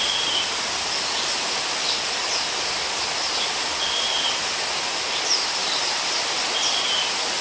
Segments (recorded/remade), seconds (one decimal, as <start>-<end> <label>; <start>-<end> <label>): 0.0-5.6 recorded; 5.6-6.4 remade; 6.4-7.4 recorded